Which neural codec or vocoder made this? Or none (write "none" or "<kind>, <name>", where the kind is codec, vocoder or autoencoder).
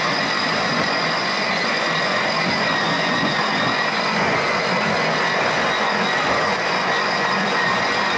vocoder, Vocos